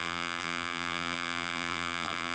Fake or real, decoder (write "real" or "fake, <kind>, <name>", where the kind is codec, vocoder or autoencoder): fake, vocoder, BigVGAN v2